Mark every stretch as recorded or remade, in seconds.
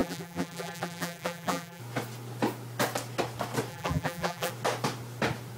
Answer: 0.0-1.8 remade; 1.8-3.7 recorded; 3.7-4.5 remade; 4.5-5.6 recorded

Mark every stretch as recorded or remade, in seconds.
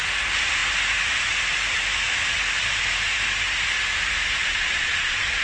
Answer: 0.0-4.4 recorded; 4.4-5.4 remade